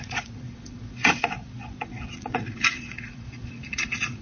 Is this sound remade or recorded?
remade